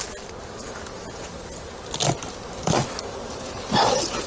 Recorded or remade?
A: recorded